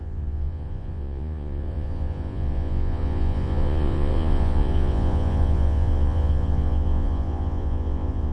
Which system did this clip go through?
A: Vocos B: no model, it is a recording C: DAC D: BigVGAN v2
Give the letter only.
A